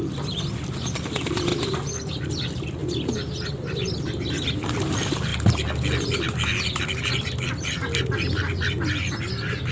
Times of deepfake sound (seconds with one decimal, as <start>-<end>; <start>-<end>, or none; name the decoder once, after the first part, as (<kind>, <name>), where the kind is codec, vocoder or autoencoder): 0.0-1.5 (vocoder, BigVGAN v2); 2.3-5.3; 6.8-9.7